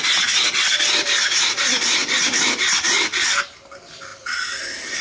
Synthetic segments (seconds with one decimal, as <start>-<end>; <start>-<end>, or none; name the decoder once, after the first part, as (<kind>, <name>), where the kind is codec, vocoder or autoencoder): 2.0-3.4 (vocoder, BigVGAN v2)